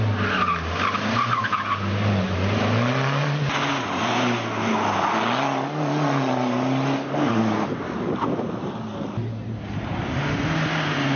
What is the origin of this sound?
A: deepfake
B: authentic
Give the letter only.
B